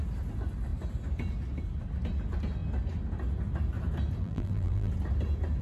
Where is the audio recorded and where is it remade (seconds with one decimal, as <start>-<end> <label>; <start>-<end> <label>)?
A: 0.0-4.2 recorded; 4.2-4.9 remade; 4.9-5.6 recorded